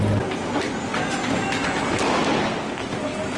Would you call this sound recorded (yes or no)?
yes